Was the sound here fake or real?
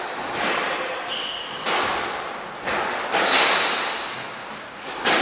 real